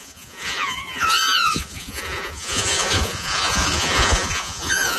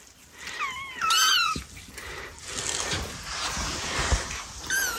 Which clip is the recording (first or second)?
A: second